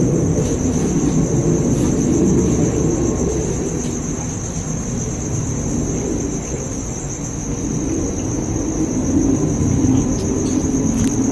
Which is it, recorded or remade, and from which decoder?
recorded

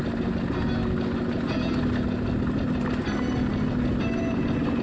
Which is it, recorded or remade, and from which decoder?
recorded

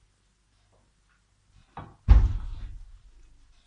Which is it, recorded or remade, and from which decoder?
recorded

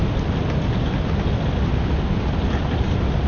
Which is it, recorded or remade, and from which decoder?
recorded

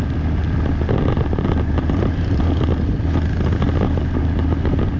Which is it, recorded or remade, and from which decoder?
recorded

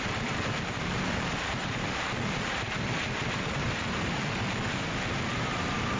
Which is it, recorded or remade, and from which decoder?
remade, vocoder, BigVGAN v2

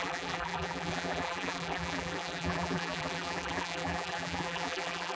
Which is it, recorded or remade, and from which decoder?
remade, vocoder, BigVGAN v2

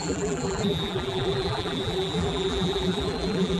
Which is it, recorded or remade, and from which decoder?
remade, vocoder, BigVGAN v2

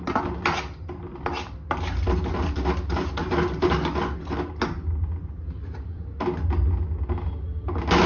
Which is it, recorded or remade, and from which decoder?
recorded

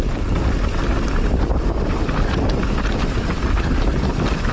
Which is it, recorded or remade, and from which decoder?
recorded